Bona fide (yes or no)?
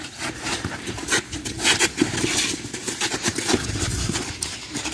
yes